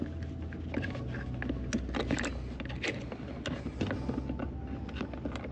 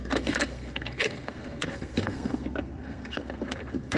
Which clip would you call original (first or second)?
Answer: first